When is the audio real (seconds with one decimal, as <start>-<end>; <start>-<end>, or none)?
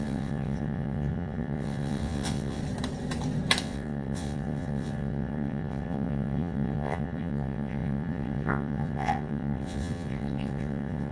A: 2.6-3.6